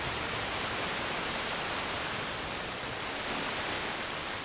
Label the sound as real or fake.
real